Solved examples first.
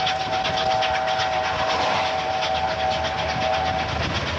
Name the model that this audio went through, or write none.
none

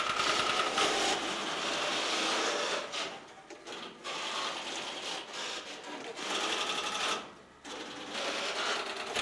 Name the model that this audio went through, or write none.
none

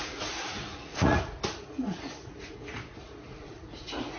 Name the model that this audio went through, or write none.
vocoder, Vocos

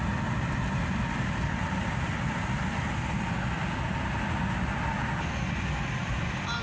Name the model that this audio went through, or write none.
none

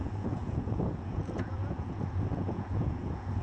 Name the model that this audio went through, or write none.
vocoder, Vocos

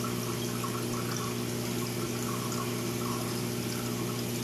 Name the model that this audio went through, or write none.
none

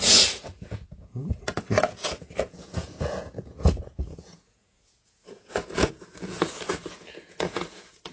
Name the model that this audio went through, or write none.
vocoder, Vocos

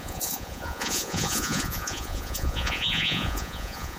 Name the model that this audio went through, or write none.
vocoder, Vocos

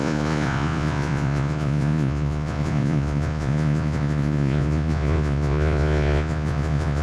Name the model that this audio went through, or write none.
vocoder, Vocos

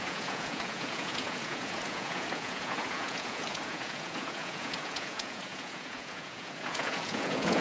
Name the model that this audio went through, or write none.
vocoder, Vocos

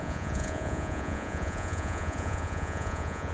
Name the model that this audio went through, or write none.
vocoder, Vocos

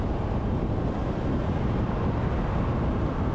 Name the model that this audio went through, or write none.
none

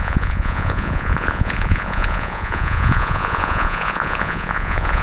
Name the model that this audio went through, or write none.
vocoder, Vocos